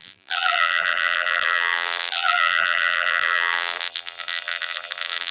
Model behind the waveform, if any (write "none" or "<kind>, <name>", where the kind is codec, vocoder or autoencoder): vocoder, BigVGAN v2